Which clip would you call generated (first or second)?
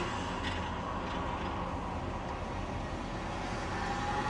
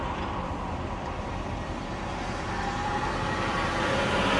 second